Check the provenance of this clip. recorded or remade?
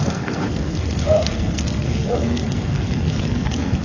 remade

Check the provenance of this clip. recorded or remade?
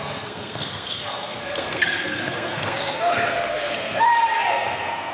remade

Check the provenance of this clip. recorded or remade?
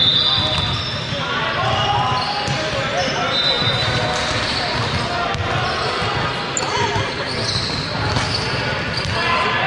recorded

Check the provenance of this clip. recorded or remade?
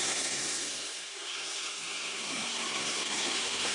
remade